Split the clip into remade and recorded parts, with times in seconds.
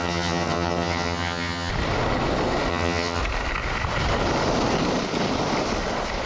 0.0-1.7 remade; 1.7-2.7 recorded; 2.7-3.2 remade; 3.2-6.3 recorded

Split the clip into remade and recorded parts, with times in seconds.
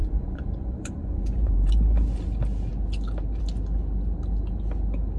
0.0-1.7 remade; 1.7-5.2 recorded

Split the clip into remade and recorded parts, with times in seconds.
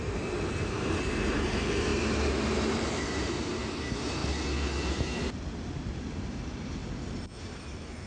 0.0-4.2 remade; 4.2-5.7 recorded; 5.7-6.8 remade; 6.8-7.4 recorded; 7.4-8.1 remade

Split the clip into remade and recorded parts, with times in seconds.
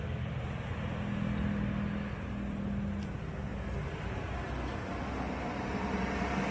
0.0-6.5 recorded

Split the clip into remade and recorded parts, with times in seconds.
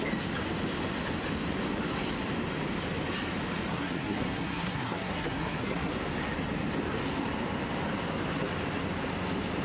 0.0-3.7 recorded; 3.7-5.9 remade; 5.9-9.6 recorded